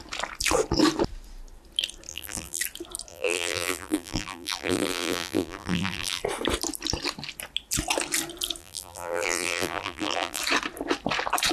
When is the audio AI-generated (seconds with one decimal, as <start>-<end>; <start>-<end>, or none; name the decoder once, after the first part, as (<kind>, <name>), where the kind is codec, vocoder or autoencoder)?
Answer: 2.1-2.6 (vocoder, BigVGAN v2); 3.1-6.2; 8.6-10.4